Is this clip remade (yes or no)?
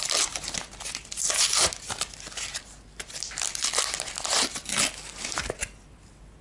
no